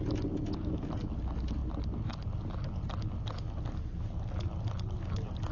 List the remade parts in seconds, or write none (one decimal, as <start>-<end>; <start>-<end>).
none